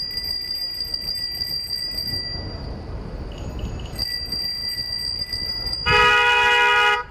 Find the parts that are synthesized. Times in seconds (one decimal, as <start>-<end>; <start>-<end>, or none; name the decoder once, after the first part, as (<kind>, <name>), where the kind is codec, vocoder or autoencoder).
2.0-3.7 (vocoder, BigVGAN v2)